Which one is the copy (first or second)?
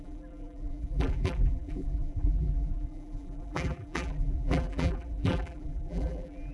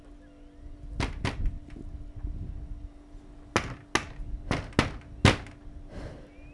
first